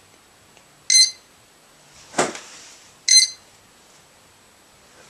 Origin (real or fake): real